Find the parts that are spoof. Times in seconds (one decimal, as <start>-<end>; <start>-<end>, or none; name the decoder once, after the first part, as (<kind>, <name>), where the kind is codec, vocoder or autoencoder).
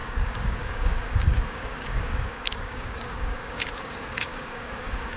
0.0-5.2 (codec, DAC)